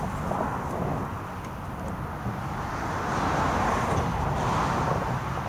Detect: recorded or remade recorded